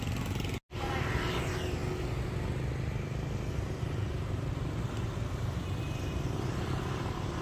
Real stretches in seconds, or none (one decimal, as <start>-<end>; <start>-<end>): 0.0-7.4